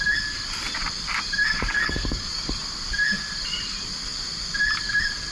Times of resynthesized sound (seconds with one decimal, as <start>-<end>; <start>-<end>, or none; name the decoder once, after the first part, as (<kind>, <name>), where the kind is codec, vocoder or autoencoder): 1.7-2.5 (codec, DAC)

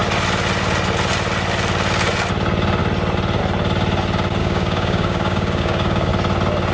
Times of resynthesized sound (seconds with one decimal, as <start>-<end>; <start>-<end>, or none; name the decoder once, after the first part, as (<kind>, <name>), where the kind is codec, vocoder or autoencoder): 4.4-6.1 (codec, DAC)

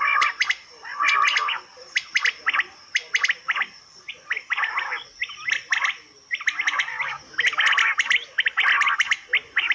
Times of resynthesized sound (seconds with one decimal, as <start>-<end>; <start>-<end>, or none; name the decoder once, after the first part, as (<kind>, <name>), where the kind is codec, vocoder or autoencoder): none